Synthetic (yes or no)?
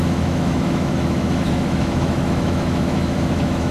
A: yes